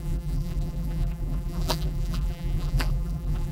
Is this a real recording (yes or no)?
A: no